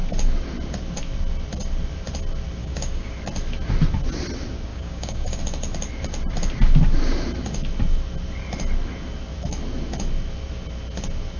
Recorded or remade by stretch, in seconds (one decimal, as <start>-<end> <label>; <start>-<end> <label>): 0.0-2.6 recorded; 2.6-3.1 remade; 3.1-4.7 recorded; 4.7-5.4 remade; 5.4-11.4 recorded